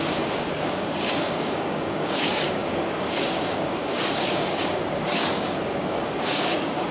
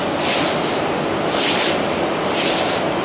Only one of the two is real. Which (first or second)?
second